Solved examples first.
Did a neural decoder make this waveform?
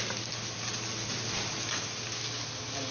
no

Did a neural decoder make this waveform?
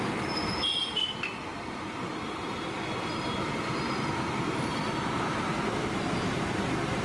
no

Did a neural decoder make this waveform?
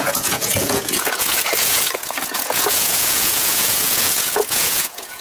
yes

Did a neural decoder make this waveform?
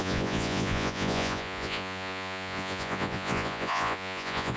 yes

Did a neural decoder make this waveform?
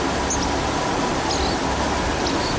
no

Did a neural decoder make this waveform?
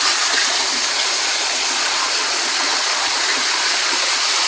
yes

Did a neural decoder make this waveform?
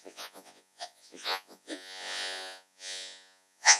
yes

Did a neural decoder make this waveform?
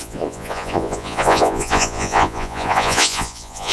yes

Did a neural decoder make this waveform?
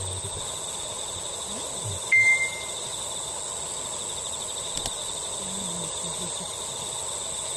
no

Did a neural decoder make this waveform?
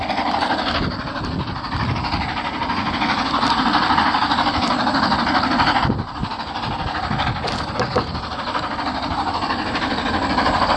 no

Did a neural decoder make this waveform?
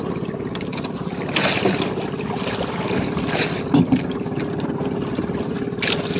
no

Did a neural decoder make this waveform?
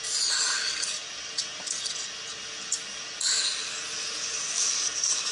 no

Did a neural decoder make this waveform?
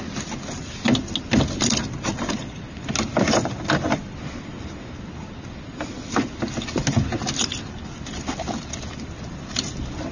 no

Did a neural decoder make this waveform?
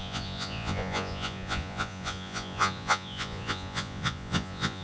yes